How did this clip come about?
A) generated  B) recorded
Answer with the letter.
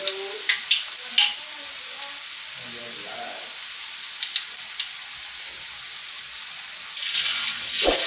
B